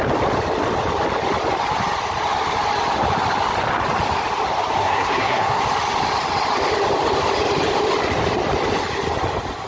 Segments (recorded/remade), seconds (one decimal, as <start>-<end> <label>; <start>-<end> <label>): 0.0-4.8 recorded; 4.8-5.6 remade; 5.6-9.7 recorded